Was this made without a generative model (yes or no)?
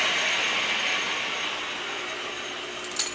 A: yes